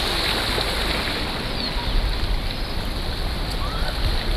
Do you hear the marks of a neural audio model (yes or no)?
no